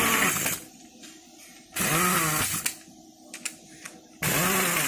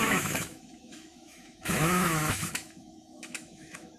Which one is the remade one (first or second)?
second